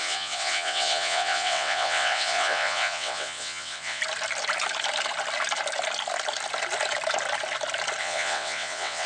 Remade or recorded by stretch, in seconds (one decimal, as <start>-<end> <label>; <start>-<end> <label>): 0.0-4.0 remade; 4.0-8.0 recorded; 8.0-9.1 remade